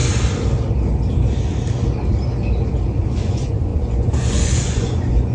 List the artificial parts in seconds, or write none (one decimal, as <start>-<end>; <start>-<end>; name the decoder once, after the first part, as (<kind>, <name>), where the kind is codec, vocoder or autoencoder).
3.2-5.3 (vocoder, Vocos)